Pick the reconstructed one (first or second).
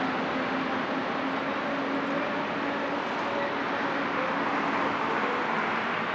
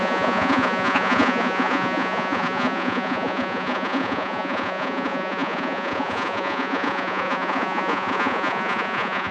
second